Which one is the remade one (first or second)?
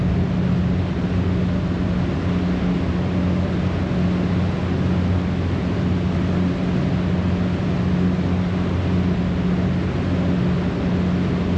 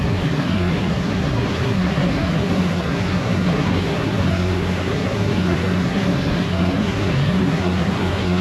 second